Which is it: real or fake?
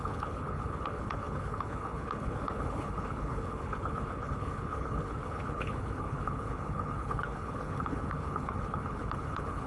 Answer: fake